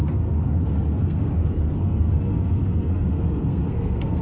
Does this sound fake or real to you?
fake